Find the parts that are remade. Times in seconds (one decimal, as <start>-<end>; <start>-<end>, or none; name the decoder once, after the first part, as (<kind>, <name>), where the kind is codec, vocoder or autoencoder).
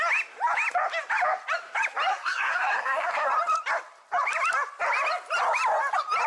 2.1-3.3 (codec, SNAC)